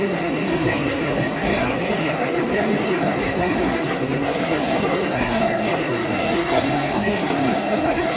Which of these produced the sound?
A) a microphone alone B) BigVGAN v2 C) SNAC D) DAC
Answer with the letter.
C